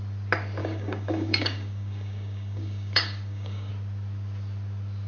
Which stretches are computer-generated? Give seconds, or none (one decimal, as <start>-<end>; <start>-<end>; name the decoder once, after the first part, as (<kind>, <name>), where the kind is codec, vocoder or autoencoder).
0.6-3.7 (codec, DAC)